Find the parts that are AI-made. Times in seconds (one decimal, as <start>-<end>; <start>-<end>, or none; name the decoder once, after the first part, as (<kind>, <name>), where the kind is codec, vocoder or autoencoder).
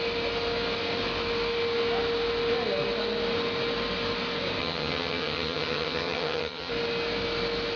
4.6-6.7 (vocoder, HiFi-GAN)